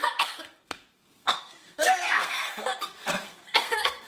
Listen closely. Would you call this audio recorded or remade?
remade